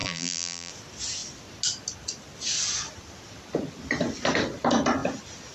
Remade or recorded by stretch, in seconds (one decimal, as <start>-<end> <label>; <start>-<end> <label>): 0.0-0.7 remade; 0.7-5.5 recorded